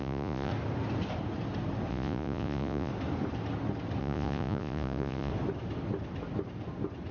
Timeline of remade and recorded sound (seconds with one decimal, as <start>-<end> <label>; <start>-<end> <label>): 0.0-0.5 remade; 0.5-1.9 recorded; 1.9-2.9 remade; 2.9-4.0 recorded; 4.0-5.3 remade; 5.3-7.1 recorded